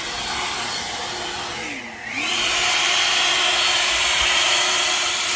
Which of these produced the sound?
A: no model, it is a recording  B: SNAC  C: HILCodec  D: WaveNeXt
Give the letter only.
A